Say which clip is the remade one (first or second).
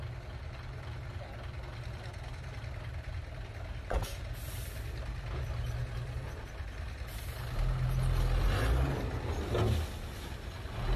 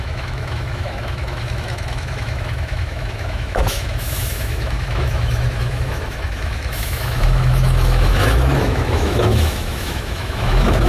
second